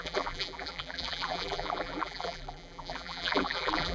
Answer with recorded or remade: remade